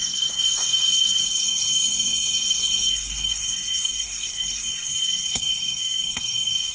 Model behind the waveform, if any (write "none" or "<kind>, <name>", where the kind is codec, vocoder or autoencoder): codec, SNAC